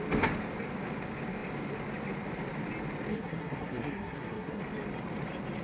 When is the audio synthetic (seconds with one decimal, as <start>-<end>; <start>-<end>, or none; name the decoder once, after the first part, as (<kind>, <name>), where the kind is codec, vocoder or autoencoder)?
3.1-4.6 (codec, SNAC)